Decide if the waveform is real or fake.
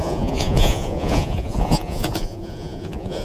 fake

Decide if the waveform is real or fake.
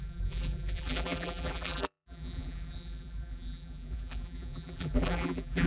fake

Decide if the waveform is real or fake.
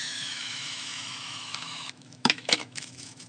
fake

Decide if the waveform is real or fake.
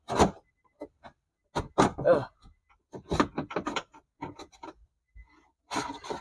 real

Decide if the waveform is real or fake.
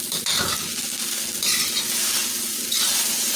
real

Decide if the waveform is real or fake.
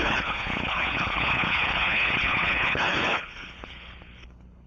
fake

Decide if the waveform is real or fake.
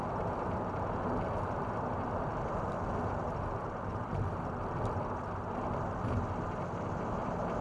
fake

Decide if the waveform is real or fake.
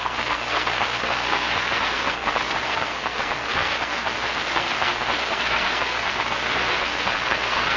fake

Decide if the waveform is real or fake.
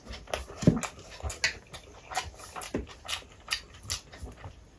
real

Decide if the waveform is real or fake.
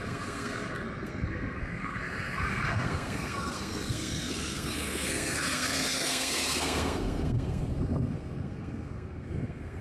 fake